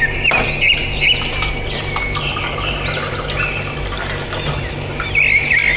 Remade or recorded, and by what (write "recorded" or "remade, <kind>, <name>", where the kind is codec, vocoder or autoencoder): recorded